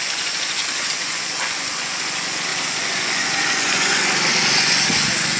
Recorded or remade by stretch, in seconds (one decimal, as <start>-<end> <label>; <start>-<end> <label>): 0.0-5.4 remade